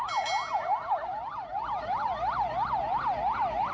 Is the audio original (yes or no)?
yes